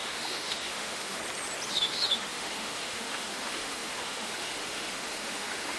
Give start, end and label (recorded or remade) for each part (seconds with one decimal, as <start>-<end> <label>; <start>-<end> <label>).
0.0-1.2 remade; 1.2-1.7 recorded; 1.7-5.8 remade